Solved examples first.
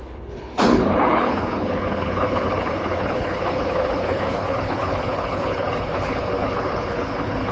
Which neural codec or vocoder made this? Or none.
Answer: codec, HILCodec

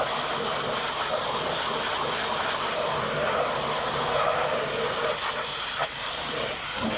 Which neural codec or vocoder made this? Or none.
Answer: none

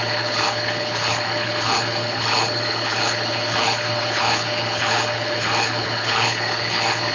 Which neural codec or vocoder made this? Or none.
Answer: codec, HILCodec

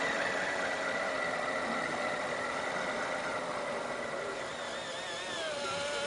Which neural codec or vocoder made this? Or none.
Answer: none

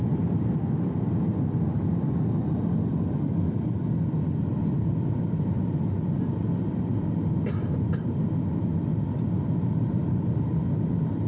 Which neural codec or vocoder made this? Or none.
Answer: none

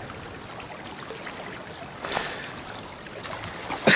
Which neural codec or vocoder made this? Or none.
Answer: none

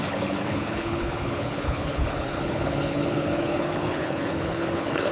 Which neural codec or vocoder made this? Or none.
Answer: codec, HILCodec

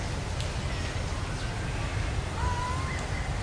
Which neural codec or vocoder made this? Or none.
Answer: none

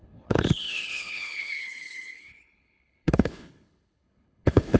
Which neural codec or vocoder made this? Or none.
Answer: codec, HILCodec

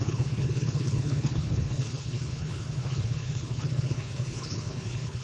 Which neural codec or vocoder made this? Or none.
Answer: codec, HILCodec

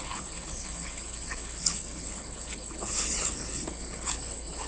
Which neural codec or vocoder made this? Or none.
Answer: codec, HILCodec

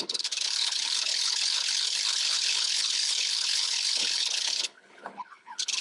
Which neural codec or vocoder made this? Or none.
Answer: codec, HILCodec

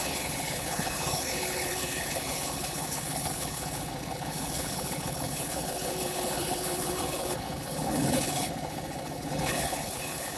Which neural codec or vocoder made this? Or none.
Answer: codec, HILCodec